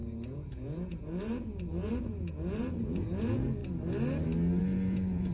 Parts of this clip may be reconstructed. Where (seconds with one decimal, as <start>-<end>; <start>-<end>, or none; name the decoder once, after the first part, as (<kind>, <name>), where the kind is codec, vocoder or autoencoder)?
0.0-3.6 (vocoder, Vocos); 4.6-5.3